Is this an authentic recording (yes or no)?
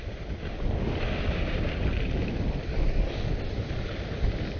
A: yes